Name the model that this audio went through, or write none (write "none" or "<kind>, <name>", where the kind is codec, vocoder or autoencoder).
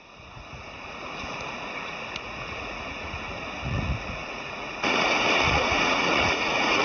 vocoder, Vocos